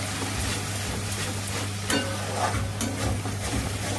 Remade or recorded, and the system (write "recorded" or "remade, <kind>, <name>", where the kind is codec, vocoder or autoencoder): recorded